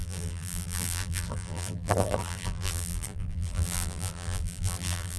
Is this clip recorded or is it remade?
remade